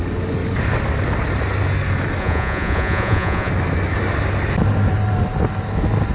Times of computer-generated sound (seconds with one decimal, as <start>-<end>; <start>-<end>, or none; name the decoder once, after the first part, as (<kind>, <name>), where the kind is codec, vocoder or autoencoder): 2.2-3.5 (vocoder, Vocos)

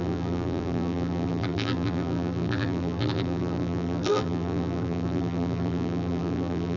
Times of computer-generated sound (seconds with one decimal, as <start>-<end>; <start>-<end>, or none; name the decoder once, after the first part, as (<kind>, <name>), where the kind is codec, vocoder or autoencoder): 0.0-6.8 (vocoder, BigVGAN v2)

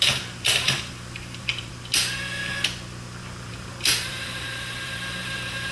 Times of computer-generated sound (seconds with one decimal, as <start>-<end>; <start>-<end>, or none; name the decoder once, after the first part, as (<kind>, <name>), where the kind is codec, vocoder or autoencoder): 0.0-1.7 (vocoder, BigVGAN v2); 3.5-5.7

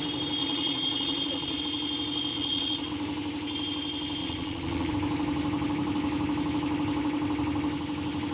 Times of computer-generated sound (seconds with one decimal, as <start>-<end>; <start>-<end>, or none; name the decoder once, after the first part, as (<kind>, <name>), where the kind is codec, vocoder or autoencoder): 0.4-1.6 (vocoder, Vocos); 2.3-2.9; 4.2-4.9

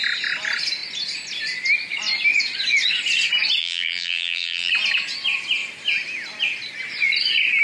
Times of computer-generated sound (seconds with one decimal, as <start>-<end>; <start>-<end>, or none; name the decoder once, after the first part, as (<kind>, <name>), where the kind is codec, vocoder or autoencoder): 3.6-4.7 (vocoder, BigVGAN v2)